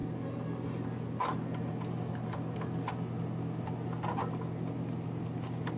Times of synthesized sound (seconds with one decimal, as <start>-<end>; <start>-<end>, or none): none